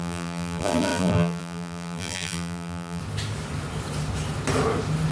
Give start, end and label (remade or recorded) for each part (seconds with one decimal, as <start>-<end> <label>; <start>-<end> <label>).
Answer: 0.0-3.0 remade; 3.0-5.1 recorded